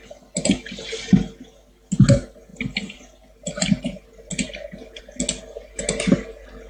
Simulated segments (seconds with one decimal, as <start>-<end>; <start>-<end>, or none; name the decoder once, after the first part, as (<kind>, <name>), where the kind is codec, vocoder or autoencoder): none